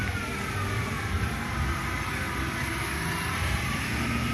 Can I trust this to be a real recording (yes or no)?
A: yes